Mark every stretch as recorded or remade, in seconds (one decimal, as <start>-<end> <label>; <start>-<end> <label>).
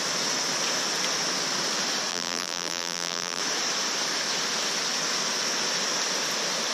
0.0-2.1 recorded; 2.1-3.4 remade; 3.4-6.7 recorded